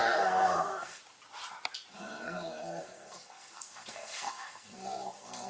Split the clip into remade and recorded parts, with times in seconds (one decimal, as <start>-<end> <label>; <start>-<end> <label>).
0.0-1.0 remade; 1.0-1.9 recorded; 1.9-5.5 remade